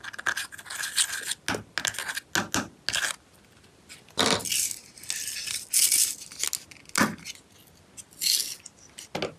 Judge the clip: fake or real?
real